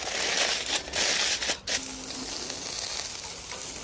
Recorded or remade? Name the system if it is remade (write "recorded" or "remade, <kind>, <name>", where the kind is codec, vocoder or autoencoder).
recorded